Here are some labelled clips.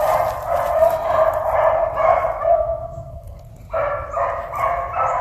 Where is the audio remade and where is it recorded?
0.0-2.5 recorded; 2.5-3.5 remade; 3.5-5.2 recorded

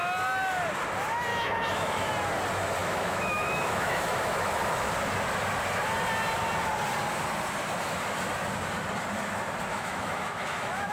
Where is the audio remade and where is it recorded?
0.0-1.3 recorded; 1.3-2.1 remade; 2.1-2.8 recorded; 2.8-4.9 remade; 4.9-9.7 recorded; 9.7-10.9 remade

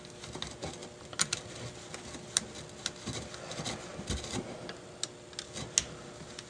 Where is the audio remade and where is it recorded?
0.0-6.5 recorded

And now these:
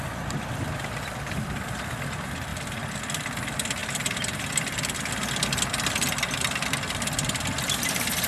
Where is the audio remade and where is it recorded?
0.0-2.5 recorded; 2.5-3.0 remade; 3.0-3.8 recorded; 3.8-5.6 remade; 5.6-8.3 recorded

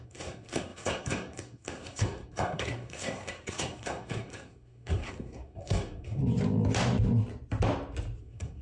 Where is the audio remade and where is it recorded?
0.0-6.2 remade; 6.2-8.2 recorded; 8.2-8.6 remade